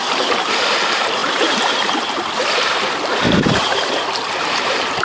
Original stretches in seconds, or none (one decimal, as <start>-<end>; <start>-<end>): none